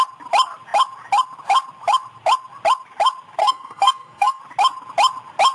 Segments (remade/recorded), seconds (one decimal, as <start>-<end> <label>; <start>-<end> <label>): 0.0-3.4 recorded; 3.4-4.4 remade; 4.4-5.5 recorded